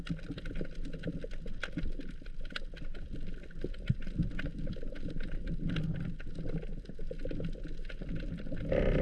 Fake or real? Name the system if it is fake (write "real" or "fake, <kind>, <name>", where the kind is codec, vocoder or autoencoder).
real